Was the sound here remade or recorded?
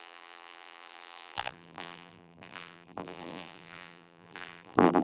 remade